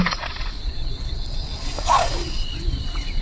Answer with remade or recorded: remade